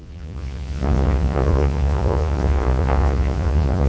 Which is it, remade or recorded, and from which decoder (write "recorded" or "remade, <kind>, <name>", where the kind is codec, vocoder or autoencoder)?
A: remade, vocoder, Vocos